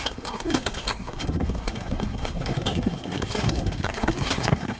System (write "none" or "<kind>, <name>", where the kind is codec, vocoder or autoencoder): codec, SNAC